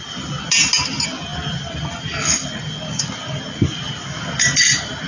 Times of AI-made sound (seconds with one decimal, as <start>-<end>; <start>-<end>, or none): none